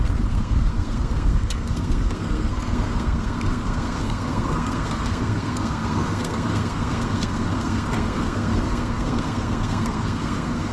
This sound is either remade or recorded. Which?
remade